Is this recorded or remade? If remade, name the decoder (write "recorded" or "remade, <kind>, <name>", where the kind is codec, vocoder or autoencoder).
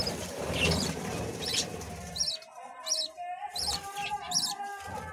remade, vocoder, BigVGAN v2